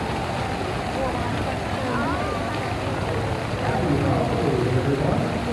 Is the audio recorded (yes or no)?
yes